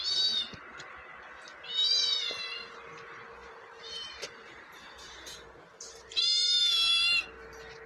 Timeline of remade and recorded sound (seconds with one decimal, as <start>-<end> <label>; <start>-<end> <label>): 0.0-3.4 recorded; 3.4-6.6 remade; 6.6-7.9 recorded